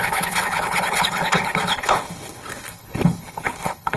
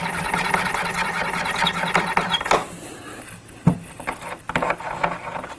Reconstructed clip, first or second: first